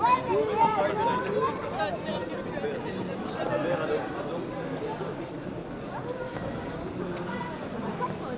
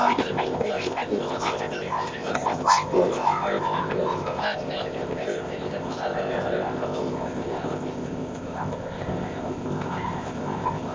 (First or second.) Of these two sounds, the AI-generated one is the second